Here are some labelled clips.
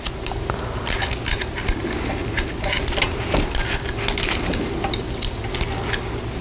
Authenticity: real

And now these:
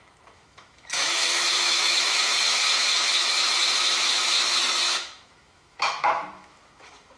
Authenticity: fake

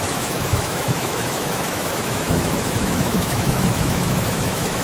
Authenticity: fake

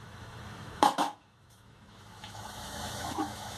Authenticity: fake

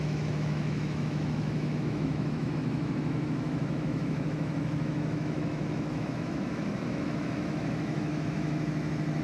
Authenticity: fake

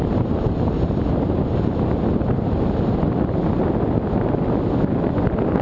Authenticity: real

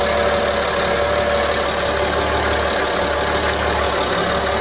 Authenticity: real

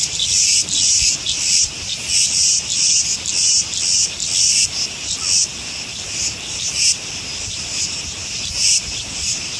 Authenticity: real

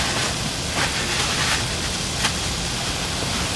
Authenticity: real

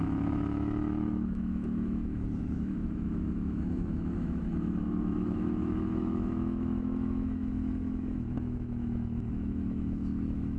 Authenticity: fake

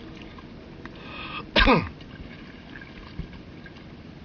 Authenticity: real